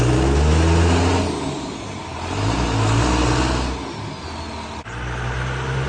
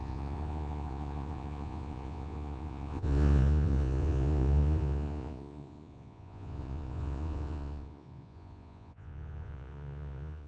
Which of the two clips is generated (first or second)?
second